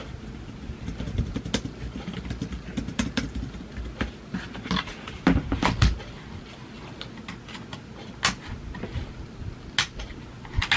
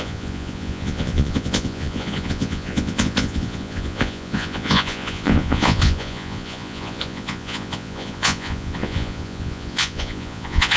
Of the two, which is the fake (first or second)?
second